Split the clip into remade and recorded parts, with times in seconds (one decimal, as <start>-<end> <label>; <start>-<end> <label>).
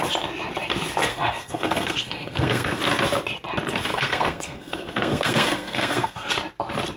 0.0-1.1 recorded; 1.1-2.8 remade; 2.8-3.9 recorded; 3.9-6.3 remade; 6.3-7.0 recorded